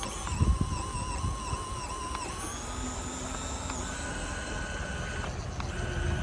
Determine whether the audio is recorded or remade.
recorded